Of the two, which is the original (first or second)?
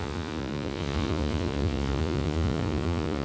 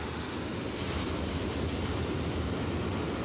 second